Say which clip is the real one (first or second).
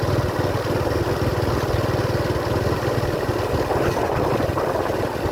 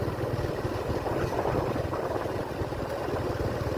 first